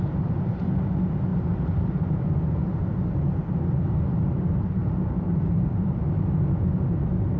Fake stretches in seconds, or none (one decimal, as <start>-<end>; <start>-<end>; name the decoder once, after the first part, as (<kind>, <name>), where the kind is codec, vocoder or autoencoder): 4.8-6.0 (vocoder, BigVGAN v2)